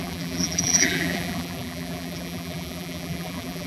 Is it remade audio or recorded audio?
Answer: remade